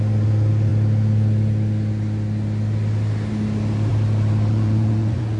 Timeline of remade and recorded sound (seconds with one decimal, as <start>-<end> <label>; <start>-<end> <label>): 0.0-4.5 recorded; 4.5-5.4 remade